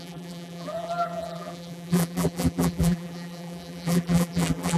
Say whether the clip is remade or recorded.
remade